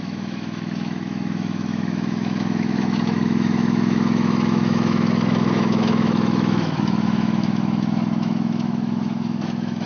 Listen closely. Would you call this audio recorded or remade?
remade